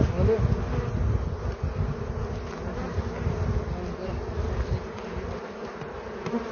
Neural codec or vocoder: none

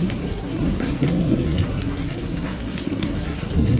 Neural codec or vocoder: codec, SNAC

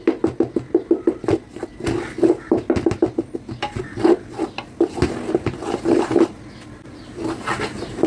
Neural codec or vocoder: none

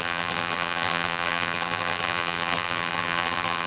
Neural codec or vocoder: vocoder, BigVGAN v2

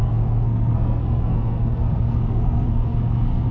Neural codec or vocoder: codec, SNAC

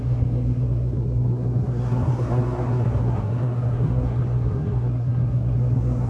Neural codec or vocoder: codec, SNAC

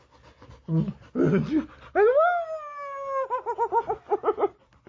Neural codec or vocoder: none